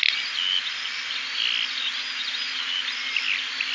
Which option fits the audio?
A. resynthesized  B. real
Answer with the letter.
B